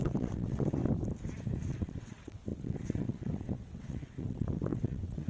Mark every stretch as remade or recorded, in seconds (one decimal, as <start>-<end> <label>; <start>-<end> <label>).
0.0-0.8 remade; 0.8-1.7 recorded; 1.7-5.3 remade